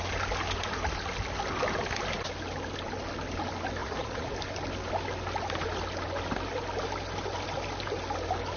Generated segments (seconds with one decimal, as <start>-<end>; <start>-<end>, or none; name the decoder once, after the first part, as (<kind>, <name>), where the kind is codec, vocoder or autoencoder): 3.8-4.3 (vocoder, Vocos)